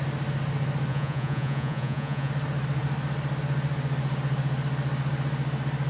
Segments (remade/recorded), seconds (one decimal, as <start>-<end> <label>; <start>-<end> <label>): 0.0-0.9 recorded; 0.9-2.3 remade; 2.3-5.9 recorded